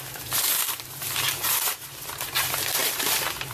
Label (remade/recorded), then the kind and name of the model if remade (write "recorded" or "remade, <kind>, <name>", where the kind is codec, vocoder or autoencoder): remade, vocoder, BigVGAN v2